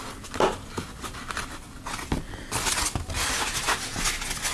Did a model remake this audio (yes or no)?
no